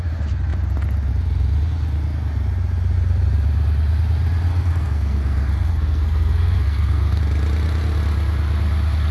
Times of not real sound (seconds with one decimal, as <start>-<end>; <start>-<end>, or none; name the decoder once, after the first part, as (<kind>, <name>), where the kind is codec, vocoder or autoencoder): 4.5-7.2 (codec, SNAC)